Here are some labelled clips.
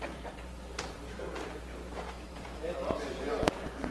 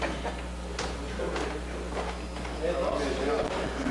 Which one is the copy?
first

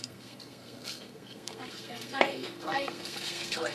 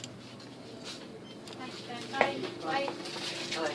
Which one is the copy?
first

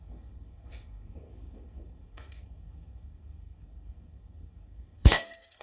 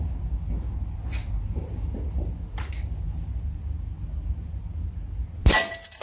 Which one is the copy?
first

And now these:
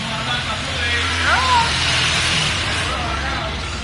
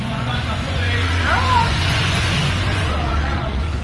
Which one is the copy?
second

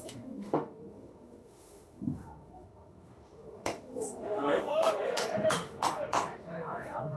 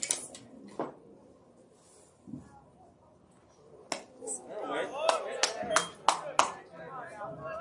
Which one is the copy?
first